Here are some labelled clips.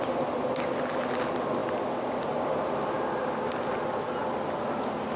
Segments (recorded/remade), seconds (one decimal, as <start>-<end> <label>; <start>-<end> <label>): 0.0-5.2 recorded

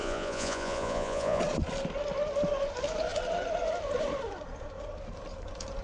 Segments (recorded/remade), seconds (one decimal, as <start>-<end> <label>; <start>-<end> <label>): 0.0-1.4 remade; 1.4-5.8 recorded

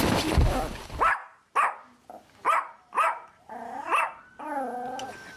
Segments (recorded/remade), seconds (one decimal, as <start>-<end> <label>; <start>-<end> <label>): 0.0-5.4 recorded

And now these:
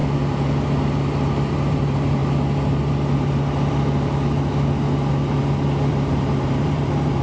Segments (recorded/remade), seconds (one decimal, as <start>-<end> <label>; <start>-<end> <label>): 0.0-1.5 recorded; 1.5-2.2 remade; 2.2-5.9 recorded; 5.9-7.2 remade

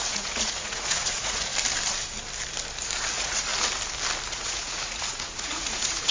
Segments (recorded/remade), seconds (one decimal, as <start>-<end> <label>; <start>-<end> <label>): 0.0-1.5 remade; 1.5-3.1 recorded; 3.1-3.5 remade; 3.5-4.3 recorded; 4.3-6.1 remade